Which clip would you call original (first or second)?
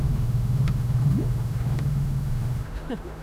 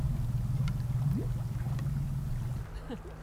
second